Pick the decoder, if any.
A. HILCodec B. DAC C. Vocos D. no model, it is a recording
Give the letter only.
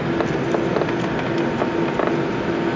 D